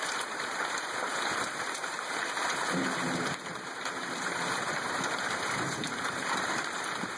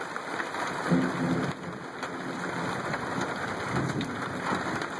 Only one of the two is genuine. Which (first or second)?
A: second